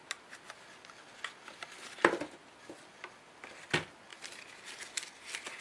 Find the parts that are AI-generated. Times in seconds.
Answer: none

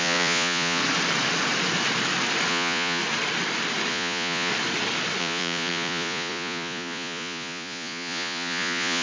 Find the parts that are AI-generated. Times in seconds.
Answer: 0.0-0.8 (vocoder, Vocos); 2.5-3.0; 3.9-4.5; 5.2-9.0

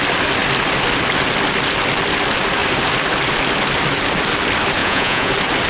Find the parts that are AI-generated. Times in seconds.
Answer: 4.8-5.3 (vocoder, Vocos)

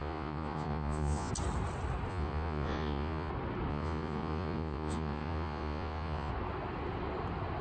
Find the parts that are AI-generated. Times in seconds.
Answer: 0.0-1.3 (vocoder, Vocos); 2.1-3.3; 3.7-6.3

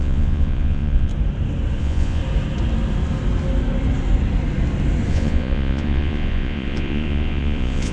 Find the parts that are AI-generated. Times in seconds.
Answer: 0.0-1.1 (vocoder, Vocos); 1.8-2.2; 5.1-7.9